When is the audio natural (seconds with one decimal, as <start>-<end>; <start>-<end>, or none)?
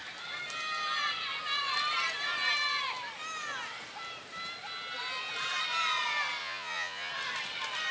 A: 0.0-6.4; 7.1-7.9